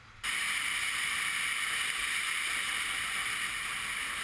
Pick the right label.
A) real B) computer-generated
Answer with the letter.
A